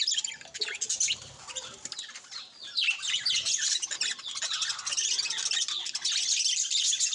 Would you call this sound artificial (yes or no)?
no